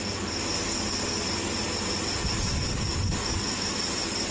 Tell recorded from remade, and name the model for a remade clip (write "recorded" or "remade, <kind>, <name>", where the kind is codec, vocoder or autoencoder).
recorded